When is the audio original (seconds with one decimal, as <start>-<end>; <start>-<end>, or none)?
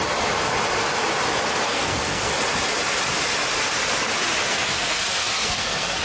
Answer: 0.0-1.6; 2.3-4.5